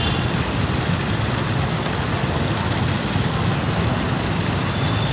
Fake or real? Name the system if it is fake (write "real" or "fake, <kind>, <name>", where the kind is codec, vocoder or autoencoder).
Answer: real